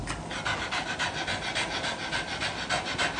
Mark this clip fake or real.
real